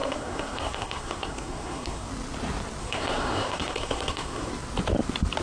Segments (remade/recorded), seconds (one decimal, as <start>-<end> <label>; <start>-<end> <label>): 0.0-2.1 remade; 2.1-2.8 recorded; 2.8-4.5 remade; 4.5-5.4 recorded